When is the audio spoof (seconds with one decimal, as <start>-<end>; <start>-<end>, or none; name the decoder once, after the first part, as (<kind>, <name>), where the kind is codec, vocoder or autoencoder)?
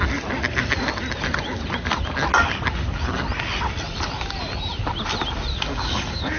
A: 5.5-6.4 (codec, DAC)